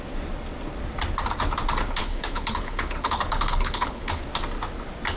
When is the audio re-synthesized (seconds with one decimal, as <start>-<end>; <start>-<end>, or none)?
2.0-4.2